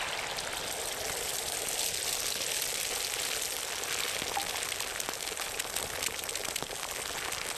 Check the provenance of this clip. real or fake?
real